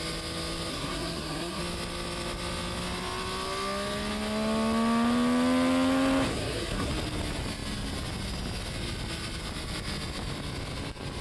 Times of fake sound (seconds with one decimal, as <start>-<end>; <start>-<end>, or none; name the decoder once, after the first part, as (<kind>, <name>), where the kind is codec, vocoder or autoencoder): 0.7-1.6 (codec, SNAC); 6.3-6.9